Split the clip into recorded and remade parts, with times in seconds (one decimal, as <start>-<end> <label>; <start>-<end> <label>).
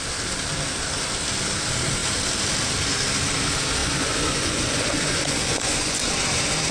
0.0-3.8 recorded; 3.8-6.1 remade; 6.1-6.7 recorded